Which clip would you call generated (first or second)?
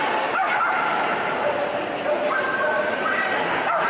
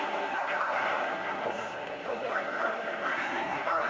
second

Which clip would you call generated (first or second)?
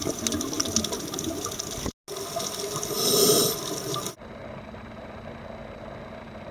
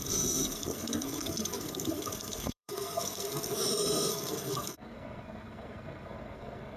second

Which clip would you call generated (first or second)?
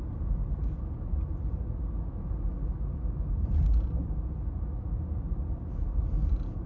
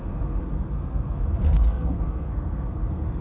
second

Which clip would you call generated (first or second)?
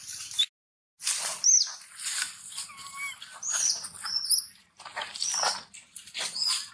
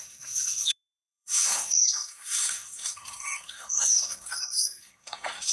second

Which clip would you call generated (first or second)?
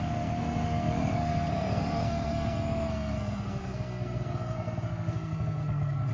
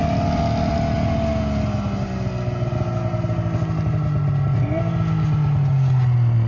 first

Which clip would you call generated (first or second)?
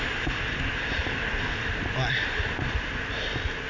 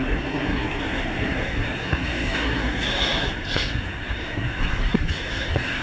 second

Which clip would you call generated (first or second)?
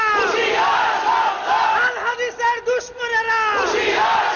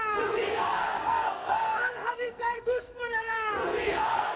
second